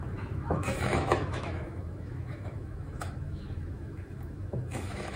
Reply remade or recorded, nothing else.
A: remade